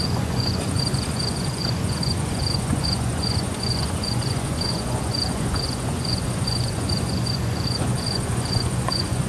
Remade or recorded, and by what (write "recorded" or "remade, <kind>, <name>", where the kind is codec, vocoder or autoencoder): remade, vocoder, Vocos